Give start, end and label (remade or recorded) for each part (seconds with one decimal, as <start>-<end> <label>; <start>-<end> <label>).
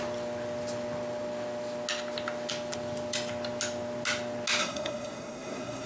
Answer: 0.0-4.6 recorded; 4.6-5.9 remade